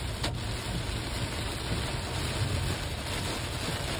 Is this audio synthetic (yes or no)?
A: no